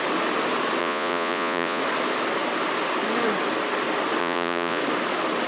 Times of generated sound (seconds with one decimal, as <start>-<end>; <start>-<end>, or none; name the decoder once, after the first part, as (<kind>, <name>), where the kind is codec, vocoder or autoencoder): 0.8-1.8 (vocoder, Vocos); 4.2-4.8

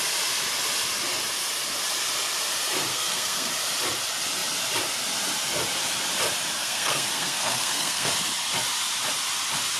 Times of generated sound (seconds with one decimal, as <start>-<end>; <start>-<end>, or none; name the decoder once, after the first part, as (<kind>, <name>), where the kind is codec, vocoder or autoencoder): 2.9-3.5 (codec, SNAC); 6.6-8.1

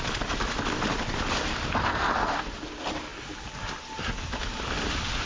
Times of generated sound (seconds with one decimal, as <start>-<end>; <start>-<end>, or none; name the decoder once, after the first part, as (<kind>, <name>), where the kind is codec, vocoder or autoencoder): 1.8-2.5 (codec, SNAC)

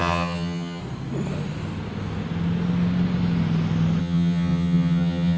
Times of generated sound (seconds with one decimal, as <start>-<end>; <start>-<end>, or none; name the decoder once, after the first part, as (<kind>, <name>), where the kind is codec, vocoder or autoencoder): 0.0-0.8 (vocoder, HiFi-GAN); 4.0-5.4